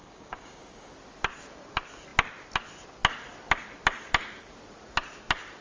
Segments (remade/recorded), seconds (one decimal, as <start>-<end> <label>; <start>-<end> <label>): 0.0-0.9 remade; 0.9-5.6 recorded

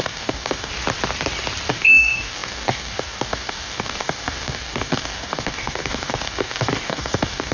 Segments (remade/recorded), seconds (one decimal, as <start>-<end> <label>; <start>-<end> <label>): 0.0-0.7 remade; 0.7-1.7 recorded; 1.7-7.5 remade